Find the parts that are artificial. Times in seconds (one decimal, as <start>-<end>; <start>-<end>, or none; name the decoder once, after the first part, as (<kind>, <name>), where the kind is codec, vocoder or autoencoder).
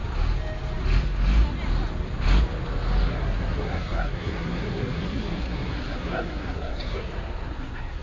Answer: 3.1-8.0 (codec, SNAC)